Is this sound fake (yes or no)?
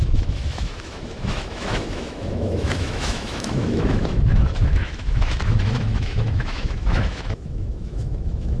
yes